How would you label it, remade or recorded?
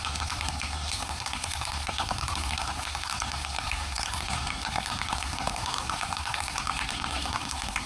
remade